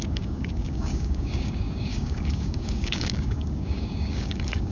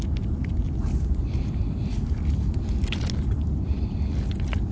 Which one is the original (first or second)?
second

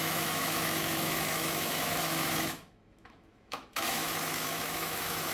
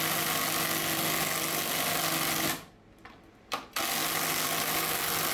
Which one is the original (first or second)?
second